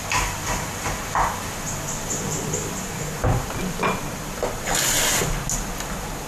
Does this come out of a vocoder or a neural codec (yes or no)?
no